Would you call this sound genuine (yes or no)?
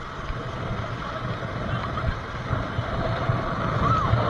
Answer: yes